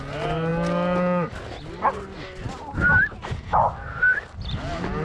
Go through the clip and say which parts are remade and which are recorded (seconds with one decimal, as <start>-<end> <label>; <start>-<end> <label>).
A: 0.0-5.0 recorded